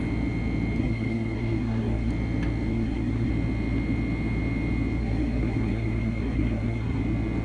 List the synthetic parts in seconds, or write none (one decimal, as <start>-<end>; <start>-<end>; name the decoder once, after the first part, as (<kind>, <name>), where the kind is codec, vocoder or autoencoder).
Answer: 0.8-2.1 (codec, SNAC); 2.7-3.3; 5.0-7.0